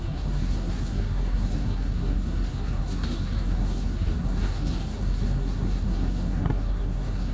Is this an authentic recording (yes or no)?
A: no